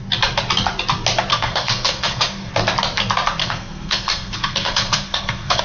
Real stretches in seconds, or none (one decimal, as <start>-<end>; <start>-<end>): 0.0-1.3; 2.5-3.4